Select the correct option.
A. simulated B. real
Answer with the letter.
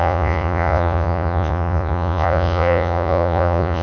A